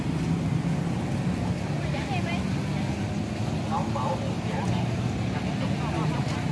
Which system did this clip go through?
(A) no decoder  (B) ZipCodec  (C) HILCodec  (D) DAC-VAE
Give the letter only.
A